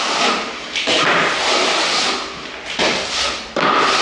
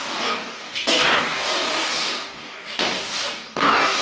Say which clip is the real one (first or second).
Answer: first